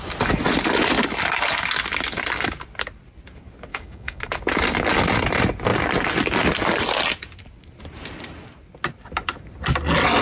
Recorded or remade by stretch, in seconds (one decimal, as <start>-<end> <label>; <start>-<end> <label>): 0.0-3.7 recorded; 3.7-4.2 remade; 4.2-10.2 recorded